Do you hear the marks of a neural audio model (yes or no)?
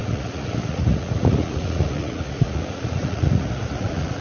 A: yes